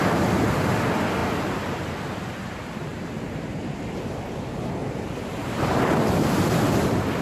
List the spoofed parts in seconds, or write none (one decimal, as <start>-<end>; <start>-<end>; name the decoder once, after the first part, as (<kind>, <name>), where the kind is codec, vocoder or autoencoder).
2.9-3.6 (vocoder, BigVGAN v2); 4.8-6.0